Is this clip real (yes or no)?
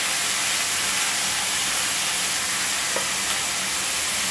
yes